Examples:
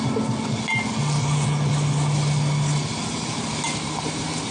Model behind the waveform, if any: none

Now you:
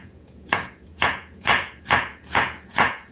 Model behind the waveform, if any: vocoder, Vocos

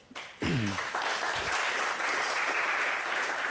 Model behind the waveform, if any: none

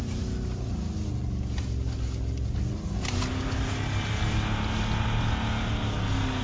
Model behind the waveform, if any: none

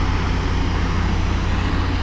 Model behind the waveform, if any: none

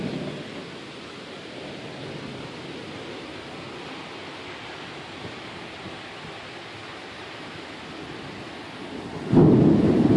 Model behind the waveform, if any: none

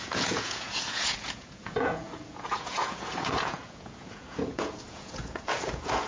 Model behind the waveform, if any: vocoder, Vocos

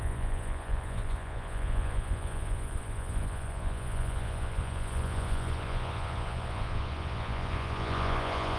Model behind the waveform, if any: vocoder, Vocos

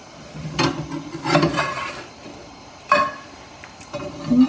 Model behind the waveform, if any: none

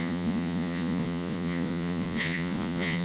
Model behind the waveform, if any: vocoder, Vocos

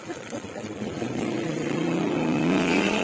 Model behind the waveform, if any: vocoder, Vocos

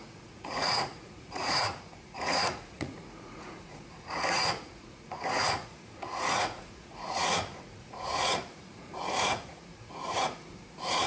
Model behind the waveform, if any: vocoder, Vocos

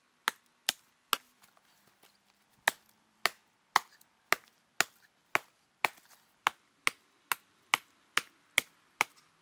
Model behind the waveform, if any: none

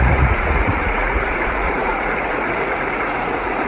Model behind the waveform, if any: vocoder, Vocos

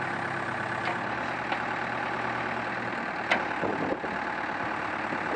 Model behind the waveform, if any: none